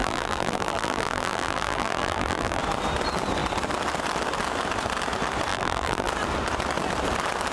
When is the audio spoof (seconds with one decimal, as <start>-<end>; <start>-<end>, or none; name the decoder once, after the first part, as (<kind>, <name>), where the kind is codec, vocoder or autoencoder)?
0.0-2.6 (vocoder, BigVGAN v2); 5.5-6.1